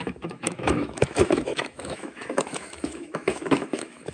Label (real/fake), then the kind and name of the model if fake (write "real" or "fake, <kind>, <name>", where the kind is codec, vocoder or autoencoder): fake, autoencoder, DAC-VAE